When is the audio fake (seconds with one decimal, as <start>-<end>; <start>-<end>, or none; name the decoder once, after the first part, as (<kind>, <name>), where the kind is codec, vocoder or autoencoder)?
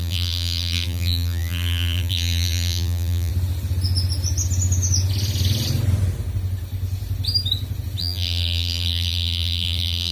0.0-3.3 (vocoder, BigVGAN v2); 8.0-10.1